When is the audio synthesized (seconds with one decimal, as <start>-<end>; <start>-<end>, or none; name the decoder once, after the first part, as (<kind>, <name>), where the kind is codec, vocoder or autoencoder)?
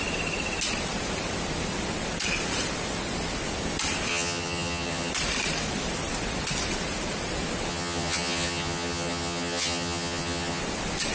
4.1-5.1 (vocoder, HiFi-GAN); 7.7-10.6